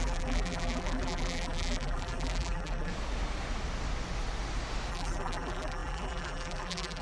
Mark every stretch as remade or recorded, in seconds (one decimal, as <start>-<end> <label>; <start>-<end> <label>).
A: 0.0-2.9 remade; 2.9-4.9 recorded; 4.9-7.0 remade